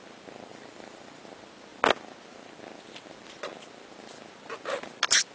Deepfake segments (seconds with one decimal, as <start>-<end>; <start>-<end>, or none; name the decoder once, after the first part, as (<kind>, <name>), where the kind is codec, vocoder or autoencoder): 0.5-1.2 (vocoder, BigVGAN v2)